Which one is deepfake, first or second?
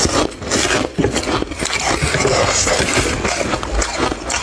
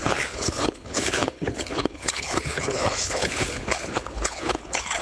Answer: second